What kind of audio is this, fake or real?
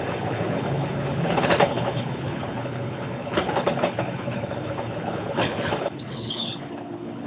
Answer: fake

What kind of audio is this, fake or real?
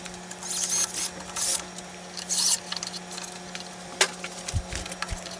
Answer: real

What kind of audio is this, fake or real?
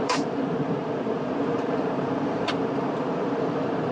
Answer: fake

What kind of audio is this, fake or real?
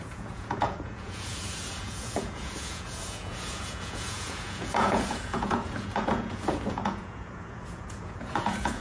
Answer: fake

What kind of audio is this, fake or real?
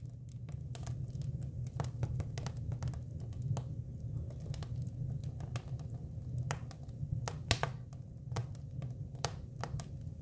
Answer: real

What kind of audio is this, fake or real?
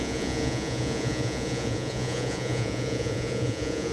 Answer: fake